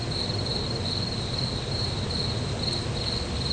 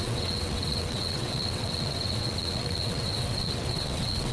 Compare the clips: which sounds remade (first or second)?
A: second